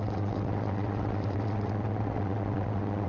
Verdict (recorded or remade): remade